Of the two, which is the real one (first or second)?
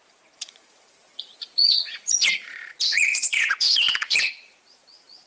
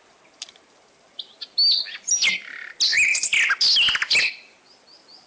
second